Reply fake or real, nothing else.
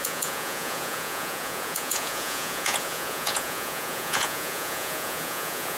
fake